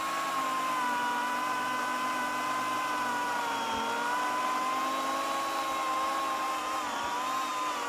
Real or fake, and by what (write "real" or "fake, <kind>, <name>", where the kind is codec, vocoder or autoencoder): real